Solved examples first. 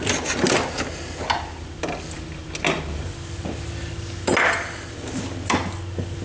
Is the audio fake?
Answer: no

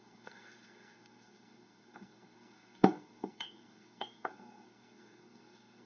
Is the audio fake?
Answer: yes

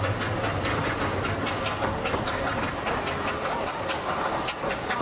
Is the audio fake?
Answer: no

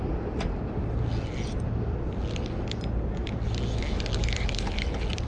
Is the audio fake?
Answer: no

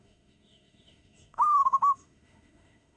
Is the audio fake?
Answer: yes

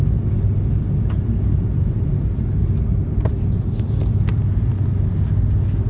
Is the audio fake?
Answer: no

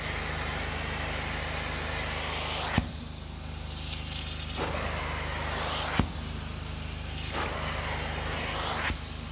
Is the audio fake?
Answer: no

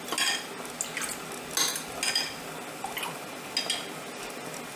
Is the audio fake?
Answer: no